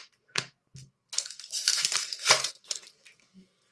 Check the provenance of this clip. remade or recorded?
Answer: remade